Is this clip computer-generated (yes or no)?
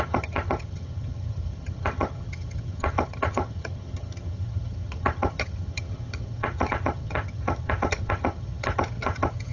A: yes